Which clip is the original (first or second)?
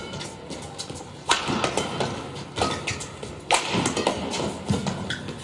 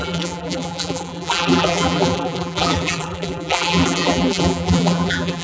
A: first